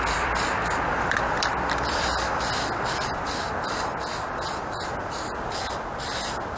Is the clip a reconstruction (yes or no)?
yes